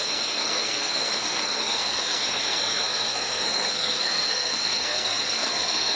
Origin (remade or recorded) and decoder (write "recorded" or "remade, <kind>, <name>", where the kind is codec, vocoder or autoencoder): remade, codec, SNAC